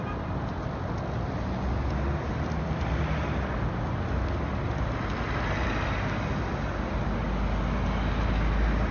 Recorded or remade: recorded